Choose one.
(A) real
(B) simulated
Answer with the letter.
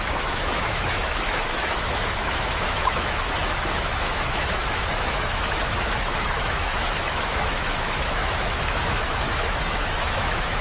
B